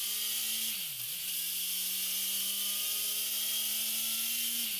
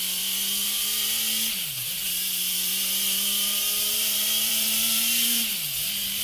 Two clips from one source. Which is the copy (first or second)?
second